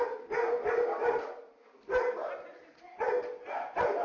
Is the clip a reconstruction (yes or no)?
no